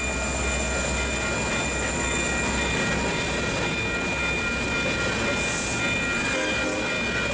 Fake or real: real